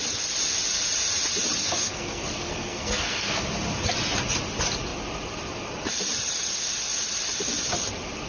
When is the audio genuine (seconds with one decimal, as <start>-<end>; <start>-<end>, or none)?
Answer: 0.0-1.6; 3.4-8.3